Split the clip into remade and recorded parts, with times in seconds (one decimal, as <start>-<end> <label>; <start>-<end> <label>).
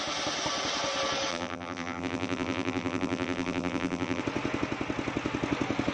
0.0-1.3 recorded; 1.3-4.2 remade; 4.2-5.9 recorded